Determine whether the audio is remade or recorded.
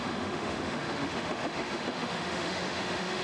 remade